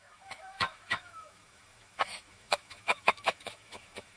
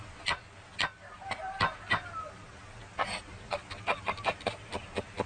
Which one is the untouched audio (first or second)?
second